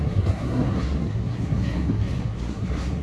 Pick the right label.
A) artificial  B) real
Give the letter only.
A